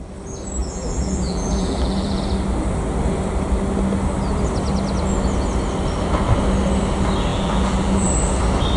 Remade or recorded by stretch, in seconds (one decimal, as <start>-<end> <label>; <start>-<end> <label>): 0.0-0.6 recorded; 0.6-2.2 remade; 2.2-7.3 recorded; 7.3-8.1 remade; 8.1-8.8 recorded